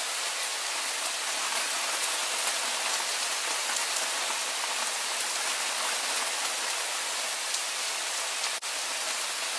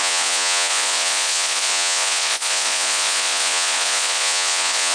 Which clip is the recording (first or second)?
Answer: first